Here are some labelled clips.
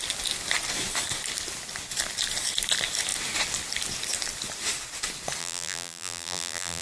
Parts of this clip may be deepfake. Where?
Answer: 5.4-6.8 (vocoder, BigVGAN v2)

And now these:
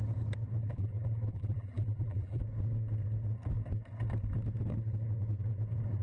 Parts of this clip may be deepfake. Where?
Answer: 0.6-2.4 (vocoder, BigVGAN v2)

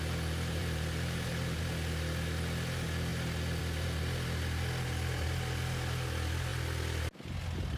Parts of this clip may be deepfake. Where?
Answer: 0.6-1.6 (vocoder, BigVGAN v2)

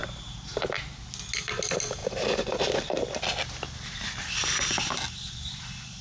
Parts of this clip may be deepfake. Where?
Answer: 0.0-0.6 (vocoder, BigVGAN v2)